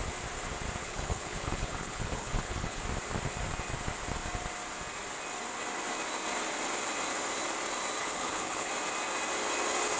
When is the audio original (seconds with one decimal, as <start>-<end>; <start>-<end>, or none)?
0.0-0.8; 2.8-8.0; 8.7-10.0